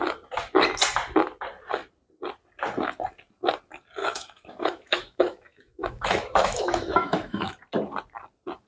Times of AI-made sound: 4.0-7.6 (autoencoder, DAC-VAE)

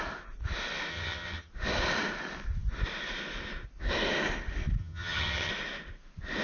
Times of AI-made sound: 0.9-1.5 (vocoder, HiFi-GAN); 4.8-5.5

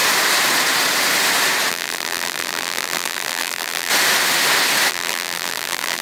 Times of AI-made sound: 1.7-3.9 (vocoder, BigVGAN v2); 4.9-6.0

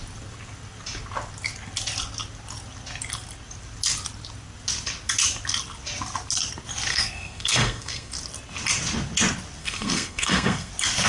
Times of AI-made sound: 6.9-8.1 (codec, SNAC); 9.6-10.7